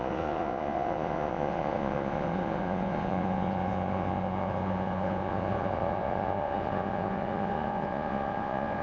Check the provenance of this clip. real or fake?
fake